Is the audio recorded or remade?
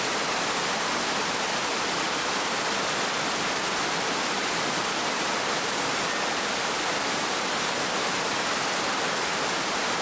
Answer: recorded